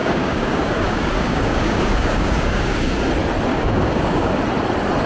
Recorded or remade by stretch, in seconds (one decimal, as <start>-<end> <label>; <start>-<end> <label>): 0.0-3.1 remade; 3.1-3.5 recorded; 3.5-4.4 remade; 4.4-5.1 recorded